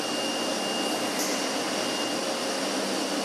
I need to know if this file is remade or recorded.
recorded